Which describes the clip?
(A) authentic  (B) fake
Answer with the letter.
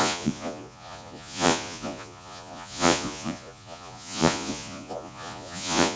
B